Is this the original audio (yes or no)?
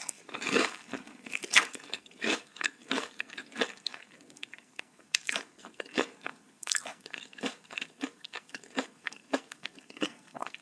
no